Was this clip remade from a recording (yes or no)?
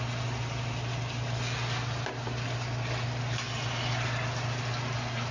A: no